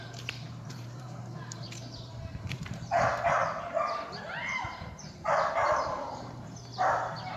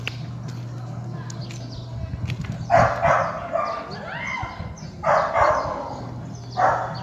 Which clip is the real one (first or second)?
second